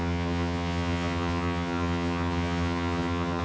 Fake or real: fake